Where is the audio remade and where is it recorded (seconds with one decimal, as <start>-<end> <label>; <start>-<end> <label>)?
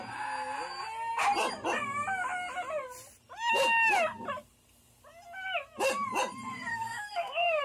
0.0-6.7 recorded; 6.7-7.6 remade